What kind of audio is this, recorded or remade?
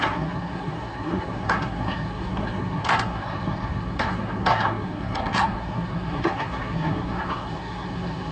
remade